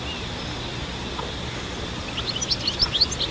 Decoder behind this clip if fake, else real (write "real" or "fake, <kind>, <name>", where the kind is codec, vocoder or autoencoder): real